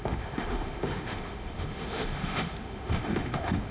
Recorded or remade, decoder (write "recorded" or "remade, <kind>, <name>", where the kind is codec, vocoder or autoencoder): remade, autoencoder, DAC-VAE